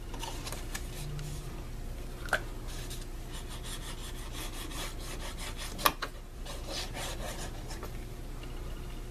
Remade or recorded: recorded